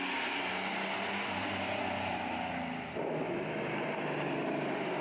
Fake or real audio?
real